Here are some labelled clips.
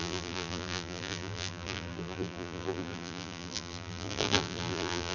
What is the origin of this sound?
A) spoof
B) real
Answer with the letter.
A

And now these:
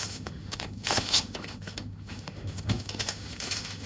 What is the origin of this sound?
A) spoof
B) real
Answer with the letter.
A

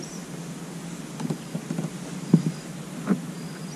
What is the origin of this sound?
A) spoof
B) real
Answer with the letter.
B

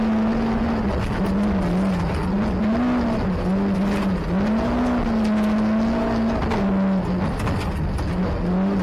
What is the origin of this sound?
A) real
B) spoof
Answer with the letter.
A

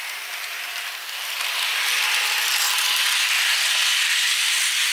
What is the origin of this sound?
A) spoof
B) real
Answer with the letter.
B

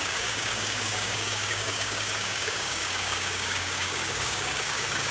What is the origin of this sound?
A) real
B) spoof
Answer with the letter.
B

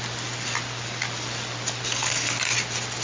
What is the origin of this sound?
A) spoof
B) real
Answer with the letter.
B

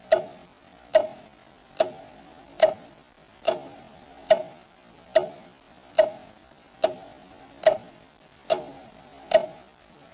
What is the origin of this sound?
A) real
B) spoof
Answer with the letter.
A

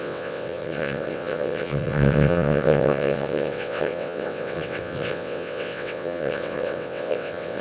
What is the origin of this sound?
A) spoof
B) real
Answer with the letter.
A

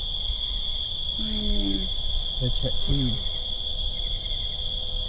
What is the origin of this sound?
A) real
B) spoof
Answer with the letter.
A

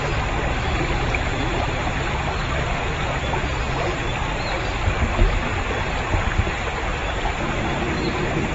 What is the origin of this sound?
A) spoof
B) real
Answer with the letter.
B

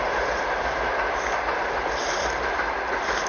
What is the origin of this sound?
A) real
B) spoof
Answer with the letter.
A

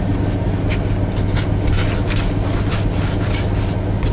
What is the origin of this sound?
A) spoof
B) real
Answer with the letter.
B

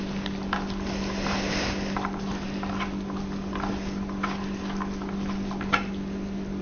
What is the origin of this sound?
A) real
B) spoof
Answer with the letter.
A